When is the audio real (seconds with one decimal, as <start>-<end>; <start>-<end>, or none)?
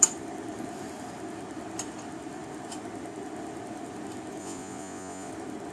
0.0-4.4; 5.3-5.7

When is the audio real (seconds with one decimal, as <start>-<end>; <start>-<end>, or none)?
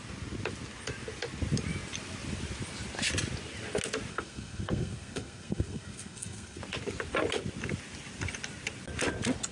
0.0-4.1; 6.6-9.5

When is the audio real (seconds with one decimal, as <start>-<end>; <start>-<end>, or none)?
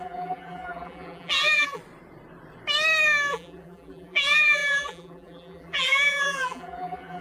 1.8-3.3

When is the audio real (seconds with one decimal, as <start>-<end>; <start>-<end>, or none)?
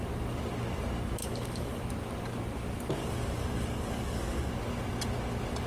0.0-1.2; 1.8-3.0; 4.5-5.7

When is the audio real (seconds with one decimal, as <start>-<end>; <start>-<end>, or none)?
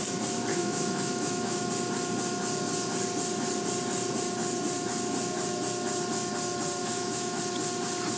0.0-0.5; 1.7-6.8; 7.4-8.2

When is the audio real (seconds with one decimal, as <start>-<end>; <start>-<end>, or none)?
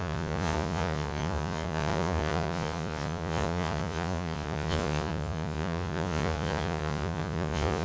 none